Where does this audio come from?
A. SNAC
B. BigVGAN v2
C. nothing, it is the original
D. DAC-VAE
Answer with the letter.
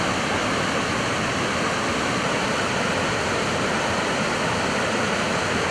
C